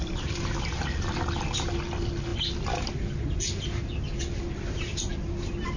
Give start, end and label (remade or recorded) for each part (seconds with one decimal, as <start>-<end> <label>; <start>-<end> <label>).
0.0-5.8 recorded